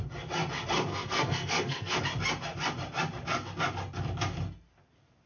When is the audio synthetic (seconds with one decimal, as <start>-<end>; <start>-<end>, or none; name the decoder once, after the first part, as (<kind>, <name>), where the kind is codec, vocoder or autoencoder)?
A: 0.9-2.0 (codec, SNAC)